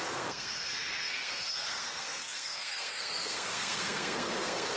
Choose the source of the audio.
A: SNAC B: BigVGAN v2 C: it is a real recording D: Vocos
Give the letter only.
A